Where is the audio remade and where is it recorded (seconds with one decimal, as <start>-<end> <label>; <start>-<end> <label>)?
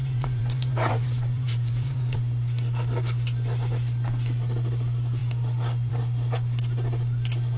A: 0.0-2.2 remade; 2.2-7.6 recorded